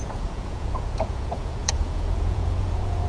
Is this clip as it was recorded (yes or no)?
no